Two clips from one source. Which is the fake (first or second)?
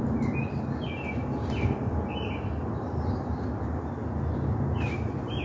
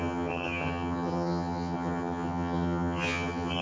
second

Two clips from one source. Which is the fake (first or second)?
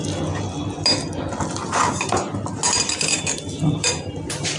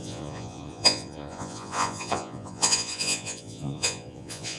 second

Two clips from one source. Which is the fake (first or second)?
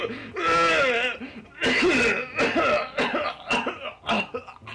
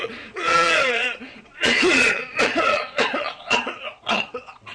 second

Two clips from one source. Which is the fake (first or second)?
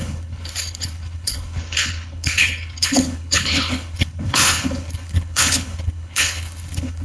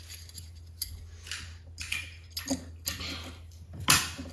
first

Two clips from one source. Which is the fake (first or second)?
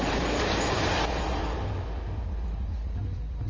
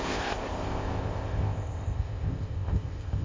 second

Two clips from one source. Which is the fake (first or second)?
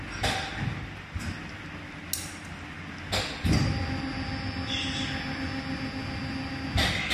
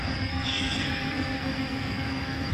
second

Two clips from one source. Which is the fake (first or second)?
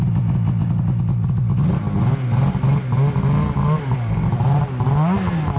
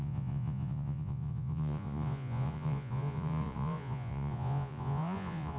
second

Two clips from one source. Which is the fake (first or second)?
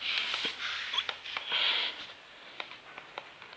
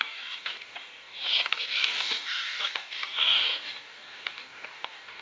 second